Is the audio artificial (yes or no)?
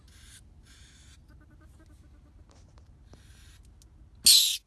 no